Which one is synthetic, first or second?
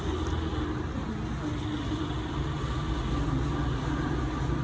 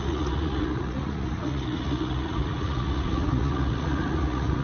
second